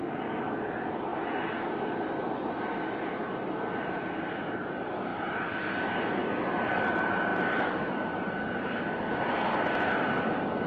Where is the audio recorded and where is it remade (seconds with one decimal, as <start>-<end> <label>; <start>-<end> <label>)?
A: 0.0-5.1 recorded; 5.1-5.6 remade; 5.6-10.7 recorded